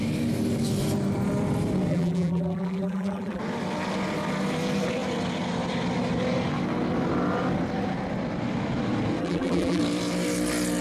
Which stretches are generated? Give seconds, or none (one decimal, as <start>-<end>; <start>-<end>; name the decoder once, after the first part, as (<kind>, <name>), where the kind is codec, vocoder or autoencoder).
1.9-3.4 (vocoder, BigVGAN v2); 9.2-9.8